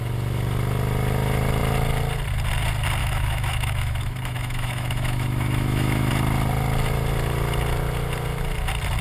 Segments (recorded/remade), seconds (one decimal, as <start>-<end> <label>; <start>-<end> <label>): 0.0-3.0 recorded; 3.0-6.1 remade; 6.1-9.0 recorded